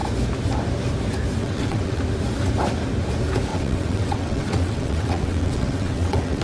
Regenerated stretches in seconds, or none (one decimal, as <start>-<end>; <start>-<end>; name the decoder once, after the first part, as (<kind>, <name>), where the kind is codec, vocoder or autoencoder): 1.4-2.0 (vocoder, WaveNeXt); 3.5-6.4